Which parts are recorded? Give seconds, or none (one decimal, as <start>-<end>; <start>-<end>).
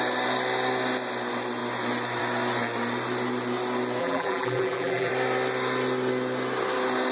0.0-4.0; 5.1-7.1